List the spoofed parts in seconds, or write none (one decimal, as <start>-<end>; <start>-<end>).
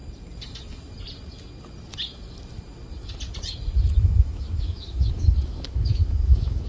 4.0-6.7